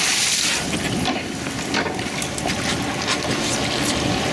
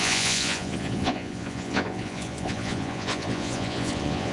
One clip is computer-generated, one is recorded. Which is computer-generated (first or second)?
second